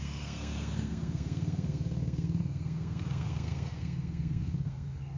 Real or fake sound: fake